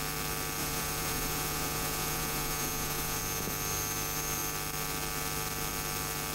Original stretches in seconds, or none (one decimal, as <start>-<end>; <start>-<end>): 0.0-0.6; 3.2-6.3

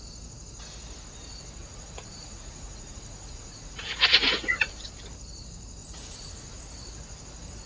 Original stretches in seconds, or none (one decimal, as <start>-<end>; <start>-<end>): 0.0-1.6; 4.7-5.8; 6.6-7.7

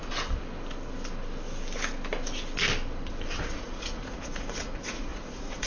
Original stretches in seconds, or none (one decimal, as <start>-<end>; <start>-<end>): 0.0-3.4

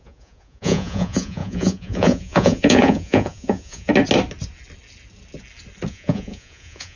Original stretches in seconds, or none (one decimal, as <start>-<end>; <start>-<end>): 3.9-5.9

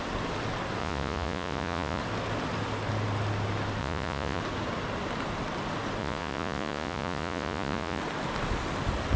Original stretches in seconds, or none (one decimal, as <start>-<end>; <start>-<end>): 0.0-0.8; 2.0-3.8; 4.4-6.0; 8.0-9.2

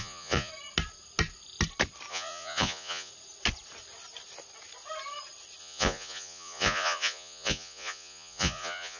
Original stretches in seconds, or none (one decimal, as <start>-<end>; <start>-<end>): 0.5-2.1; 3.1-5.6

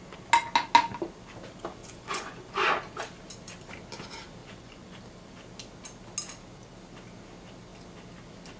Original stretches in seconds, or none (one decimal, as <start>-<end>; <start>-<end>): 0.0-1.8; 2.5-4.4; 5.0-8.6

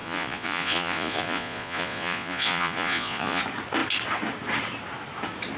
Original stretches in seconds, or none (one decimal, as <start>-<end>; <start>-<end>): 3.4-5.6